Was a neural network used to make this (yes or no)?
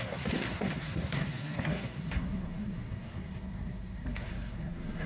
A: yes